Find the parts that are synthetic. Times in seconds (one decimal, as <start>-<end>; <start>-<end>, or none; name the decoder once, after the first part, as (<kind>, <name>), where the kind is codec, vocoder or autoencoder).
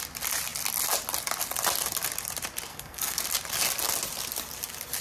2.7-3.2 (codec, SNAC)